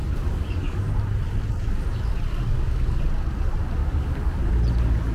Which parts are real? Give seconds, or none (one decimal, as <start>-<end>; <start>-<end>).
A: 0.9-2.3; 3.0-3.8; 4.4-5.1